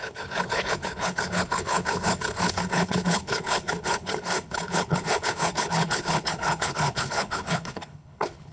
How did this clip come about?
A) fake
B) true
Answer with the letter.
A